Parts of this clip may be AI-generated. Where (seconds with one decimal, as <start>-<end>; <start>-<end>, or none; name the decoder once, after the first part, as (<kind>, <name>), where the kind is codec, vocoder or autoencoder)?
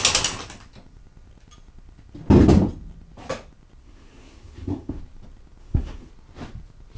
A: 3.8-5.0 (codec, SNAC); 5.6-6.1